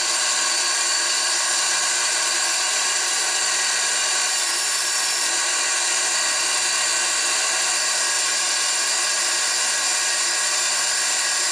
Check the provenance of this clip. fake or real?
real